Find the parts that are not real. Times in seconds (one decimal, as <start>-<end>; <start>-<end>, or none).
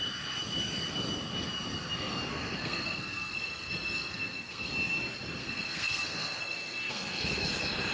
2.3-4.7; 5.4-7.5